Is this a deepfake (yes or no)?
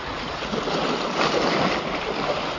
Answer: no